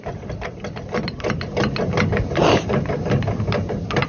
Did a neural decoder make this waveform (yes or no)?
no